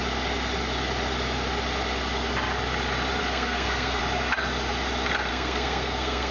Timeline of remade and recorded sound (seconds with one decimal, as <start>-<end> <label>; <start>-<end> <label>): 0.0-3.2 recorded; 3.2-4.0 remade; 4.0-5.3 recorded; 5.3-6.3 remade